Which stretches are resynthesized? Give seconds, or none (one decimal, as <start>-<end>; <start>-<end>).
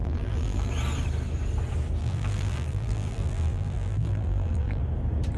0.0-0.7; 2.0-4.8